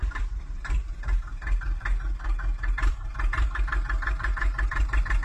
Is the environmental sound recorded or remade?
remade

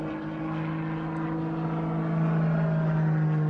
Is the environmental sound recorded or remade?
recorded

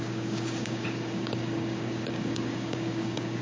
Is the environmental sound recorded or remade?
remade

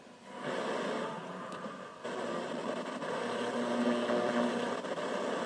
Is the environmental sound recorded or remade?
recorded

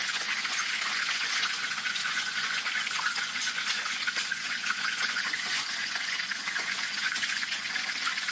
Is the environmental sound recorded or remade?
remade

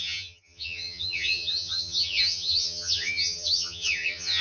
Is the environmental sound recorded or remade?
remade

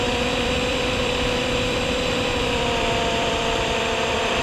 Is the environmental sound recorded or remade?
remade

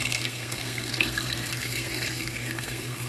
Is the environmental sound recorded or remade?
remade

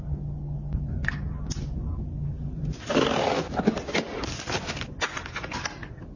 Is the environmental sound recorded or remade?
recorded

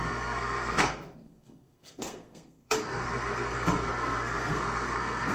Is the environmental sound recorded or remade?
remade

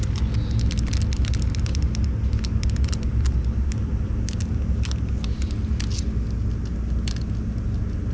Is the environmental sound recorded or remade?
recorded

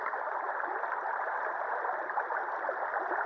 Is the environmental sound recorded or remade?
recorded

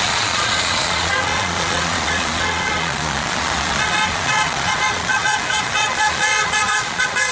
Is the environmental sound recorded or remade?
remade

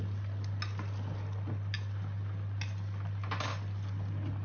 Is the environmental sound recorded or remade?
recorded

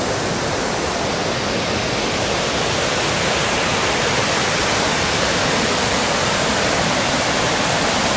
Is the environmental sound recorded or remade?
recorded